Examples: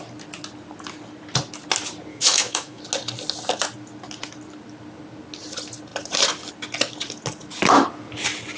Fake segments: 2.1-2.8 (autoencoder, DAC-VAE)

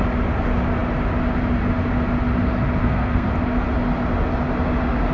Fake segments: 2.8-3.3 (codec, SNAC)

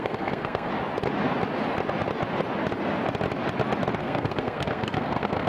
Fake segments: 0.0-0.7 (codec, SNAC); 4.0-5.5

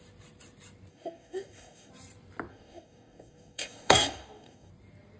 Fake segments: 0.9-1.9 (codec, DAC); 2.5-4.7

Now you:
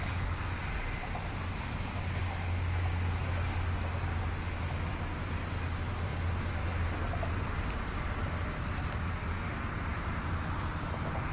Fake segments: none

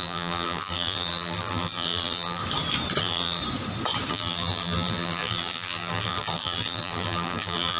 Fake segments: 0.0-2.4 (vocoder, BigVGAN v2); 3.0-3.4; 4.1-7.8